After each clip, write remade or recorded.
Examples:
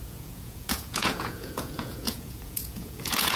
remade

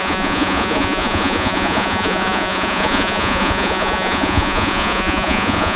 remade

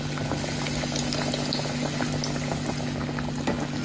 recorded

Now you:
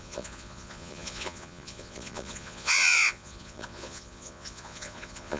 remade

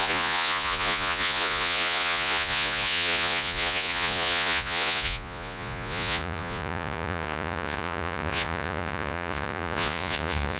remade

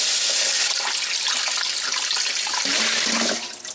recorded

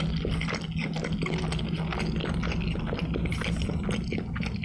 recorded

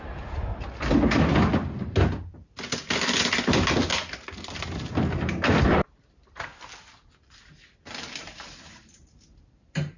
recorded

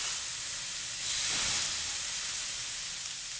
recorded